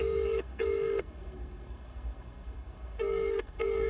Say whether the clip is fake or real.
fake